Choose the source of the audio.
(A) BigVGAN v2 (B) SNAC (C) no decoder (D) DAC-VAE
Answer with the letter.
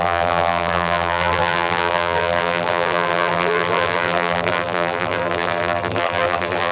A